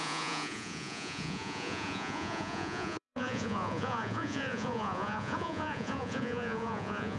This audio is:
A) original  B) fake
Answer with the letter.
B